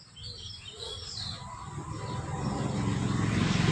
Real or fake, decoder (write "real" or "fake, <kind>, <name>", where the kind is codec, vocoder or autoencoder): real